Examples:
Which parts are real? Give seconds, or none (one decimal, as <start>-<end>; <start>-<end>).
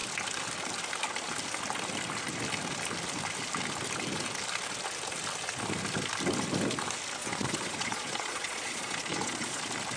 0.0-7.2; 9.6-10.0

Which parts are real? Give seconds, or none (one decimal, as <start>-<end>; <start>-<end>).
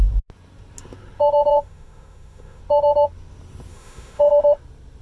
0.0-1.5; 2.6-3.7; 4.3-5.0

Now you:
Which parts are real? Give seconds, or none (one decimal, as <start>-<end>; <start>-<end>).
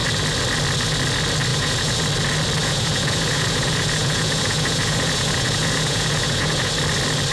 0.0-1.5; 2.0-2.6; 6.7-7.3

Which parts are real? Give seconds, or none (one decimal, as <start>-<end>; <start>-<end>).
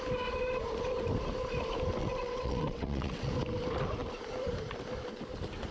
0.0-2.0; 3.3-5.7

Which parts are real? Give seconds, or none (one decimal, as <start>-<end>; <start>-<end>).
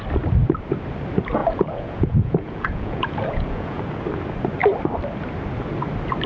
0.0-1.4; 3.8-6.3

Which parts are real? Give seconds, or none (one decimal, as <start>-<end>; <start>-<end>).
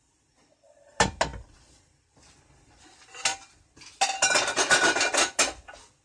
0.0-6.0